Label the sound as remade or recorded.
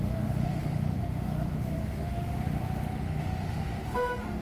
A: remade